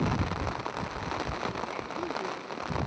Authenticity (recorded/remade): recorded